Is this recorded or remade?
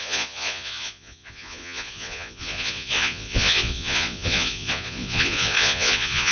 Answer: remade